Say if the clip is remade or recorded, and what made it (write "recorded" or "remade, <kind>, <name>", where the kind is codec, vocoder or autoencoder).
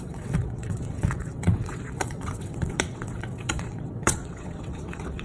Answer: remade, vocoder, WaveNeXt